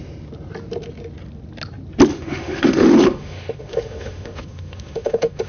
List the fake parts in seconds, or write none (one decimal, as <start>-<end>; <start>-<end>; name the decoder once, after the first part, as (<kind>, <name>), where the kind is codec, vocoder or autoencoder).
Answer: 2.1-5.5 (autoencoder, DAC-VAE)